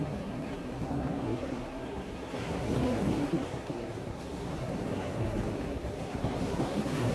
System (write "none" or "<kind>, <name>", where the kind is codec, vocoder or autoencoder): codec, SNAC